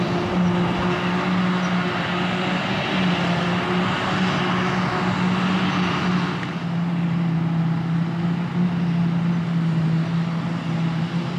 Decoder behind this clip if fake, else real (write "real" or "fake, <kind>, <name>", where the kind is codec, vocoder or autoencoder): real